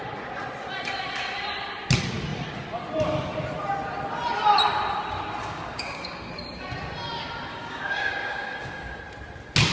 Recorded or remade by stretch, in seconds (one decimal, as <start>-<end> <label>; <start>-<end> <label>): 0.0-5.4 recorded; 5.4-6.3 remade; 6.3-7.5 recorded; 7.5-9.0 remade; 9.0-9.7 recorded